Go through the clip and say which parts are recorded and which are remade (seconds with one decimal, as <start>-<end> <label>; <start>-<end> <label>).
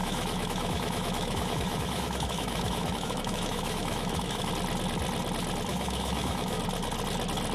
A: 0.0-4.5 remade; 4.5-5.7 recorded; 5.7-6.6 remade; 6.6-7.5 recorded